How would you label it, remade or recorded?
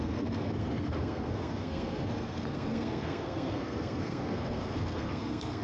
remade